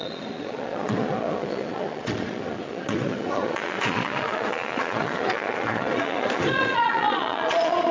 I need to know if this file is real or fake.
fake